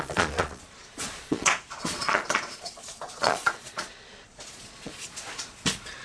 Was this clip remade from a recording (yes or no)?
yes